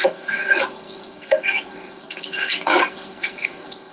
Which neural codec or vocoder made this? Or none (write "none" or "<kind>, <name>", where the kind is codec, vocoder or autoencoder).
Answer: codec, SNAC